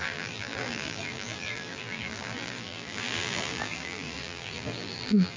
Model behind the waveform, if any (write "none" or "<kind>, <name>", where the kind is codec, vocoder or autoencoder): vocoder, BigVGAN v2